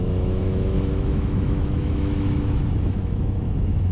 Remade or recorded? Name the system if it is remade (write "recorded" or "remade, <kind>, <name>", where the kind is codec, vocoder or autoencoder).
remade, autoencoder, DAC-VAE